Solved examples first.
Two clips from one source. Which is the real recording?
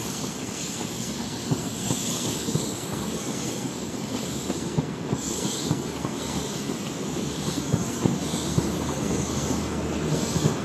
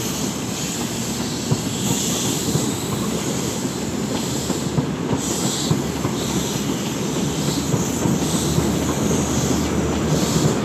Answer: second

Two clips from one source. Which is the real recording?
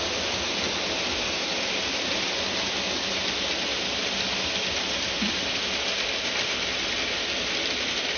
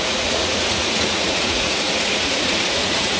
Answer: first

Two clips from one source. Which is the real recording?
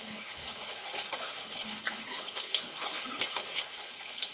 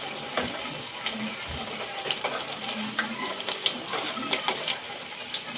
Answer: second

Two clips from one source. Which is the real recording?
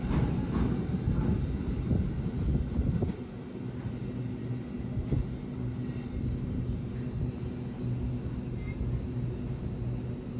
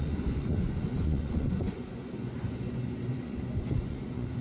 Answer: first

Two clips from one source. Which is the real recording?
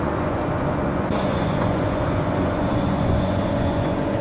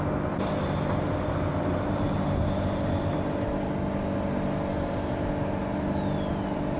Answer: second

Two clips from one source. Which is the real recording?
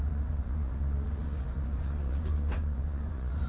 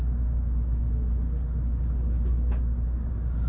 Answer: second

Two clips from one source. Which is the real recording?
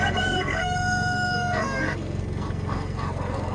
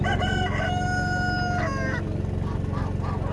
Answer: second